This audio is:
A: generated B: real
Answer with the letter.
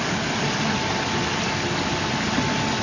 B